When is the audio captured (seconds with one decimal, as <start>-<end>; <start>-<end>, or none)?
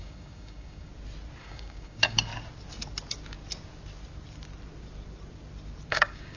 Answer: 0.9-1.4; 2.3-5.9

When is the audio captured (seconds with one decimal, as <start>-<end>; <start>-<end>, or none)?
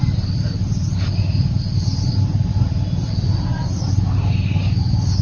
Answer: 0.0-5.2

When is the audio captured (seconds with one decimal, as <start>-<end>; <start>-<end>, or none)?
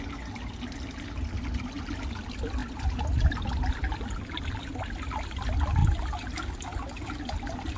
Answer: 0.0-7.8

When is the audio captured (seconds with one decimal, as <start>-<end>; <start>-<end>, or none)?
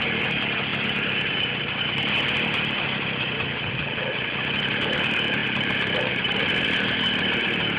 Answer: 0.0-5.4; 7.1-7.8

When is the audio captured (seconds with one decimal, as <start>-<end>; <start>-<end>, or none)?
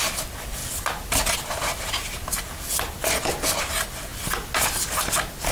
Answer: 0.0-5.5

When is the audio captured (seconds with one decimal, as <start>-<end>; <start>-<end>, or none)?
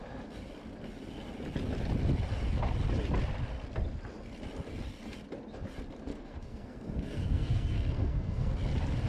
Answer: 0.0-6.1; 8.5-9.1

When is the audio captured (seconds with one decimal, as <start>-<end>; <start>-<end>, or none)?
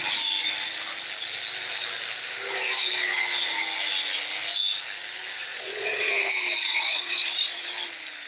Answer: 0.0-5.5; 6.1-6.7; 7.7-8.3